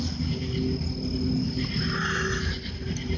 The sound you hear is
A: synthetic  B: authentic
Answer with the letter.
B